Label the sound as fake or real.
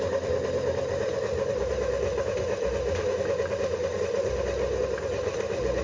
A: real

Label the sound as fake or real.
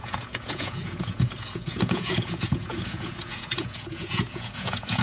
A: fake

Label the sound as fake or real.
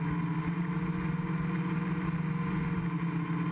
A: real